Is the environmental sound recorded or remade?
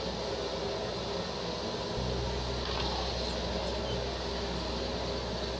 recorded